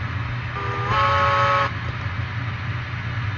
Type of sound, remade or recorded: recorded